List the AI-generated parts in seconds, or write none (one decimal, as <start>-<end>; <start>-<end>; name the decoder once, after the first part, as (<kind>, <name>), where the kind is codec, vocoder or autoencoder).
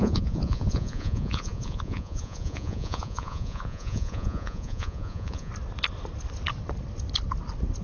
0.0-5.5 (vocoder, Vocos)